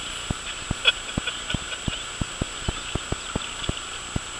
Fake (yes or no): no